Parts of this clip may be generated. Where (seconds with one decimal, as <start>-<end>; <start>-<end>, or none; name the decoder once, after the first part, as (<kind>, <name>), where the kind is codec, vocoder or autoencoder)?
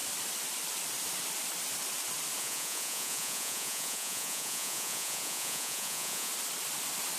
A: 2.4-6.3 (vocoder, Vocos)